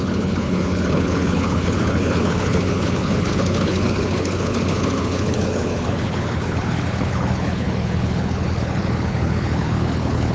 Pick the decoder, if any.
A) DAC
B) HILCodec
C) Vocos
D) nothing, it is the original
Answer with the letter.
B